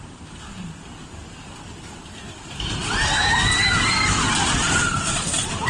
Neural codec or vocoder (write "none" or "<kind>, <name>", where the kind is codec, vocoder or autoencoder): none